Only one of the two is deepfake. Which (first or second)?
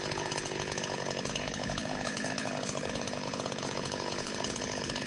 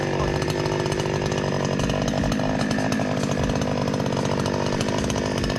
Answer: first